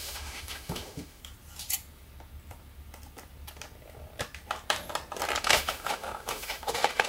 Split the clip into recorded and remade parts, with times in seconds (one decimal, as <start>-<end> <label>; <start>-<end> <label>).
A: 0.0-1.2 remade; 1.2-5.4 recorded; 5.4-7.1 remade